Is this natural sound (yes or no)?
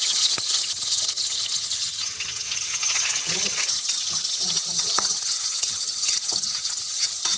no